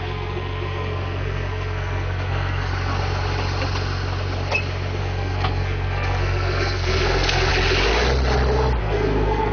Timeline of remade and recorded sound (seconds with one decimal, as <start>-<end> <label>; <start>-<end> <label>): 0.0-2.7 remade; 2.7-5.0 recorded; 5.0-7.5 remade; 7.5-8.8 recorded; 8.8-9.5 remade